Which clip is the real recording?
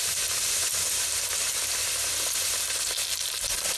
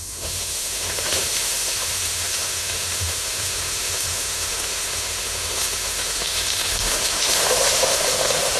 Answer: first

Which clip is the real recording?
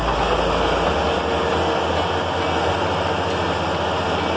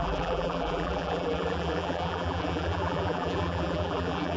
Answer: first